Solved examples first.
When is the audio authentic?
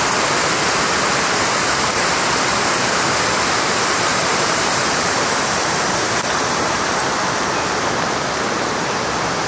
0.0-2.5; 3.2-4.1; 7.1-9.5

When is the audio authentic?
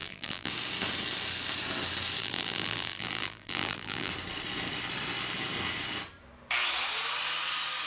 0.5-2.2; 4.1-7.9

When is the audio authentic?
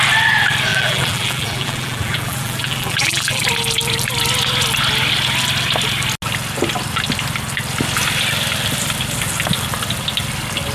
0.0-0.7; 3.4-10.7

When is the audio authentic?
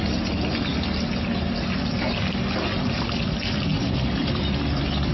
0.0-3.7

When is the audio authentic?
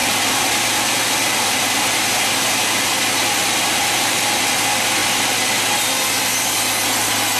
4.4-7.4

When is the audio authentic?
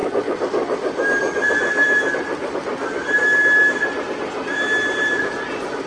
0.0-1.2; 2.8-5.0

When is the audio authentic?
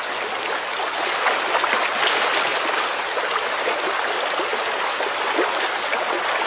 0.0-2.5; 4.3-6.5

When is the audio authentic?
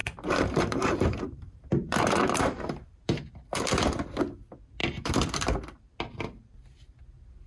4.2-4.8; 5.8-7.5